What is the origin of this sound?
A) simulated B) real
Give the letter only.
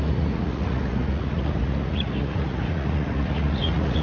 A